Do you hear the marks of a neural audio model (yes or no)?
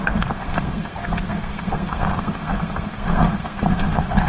yes